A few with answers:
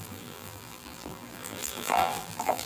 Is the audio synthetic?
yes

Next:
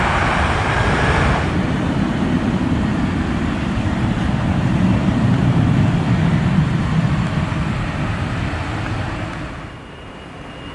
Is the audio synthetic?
yes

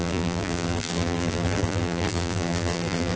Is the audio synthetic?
yes